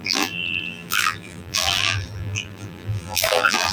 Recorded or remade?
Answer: remade